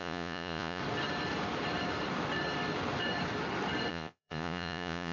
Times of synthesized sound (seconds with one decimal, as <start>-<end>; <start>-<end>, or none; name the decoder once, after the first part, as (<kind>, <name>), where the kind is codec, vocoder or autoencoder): 0.0-0.8 (vocoder, Vocos); 3.9-5.1